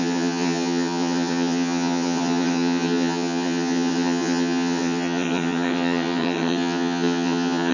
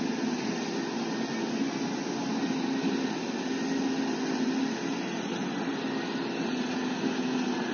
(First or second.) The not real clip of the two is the first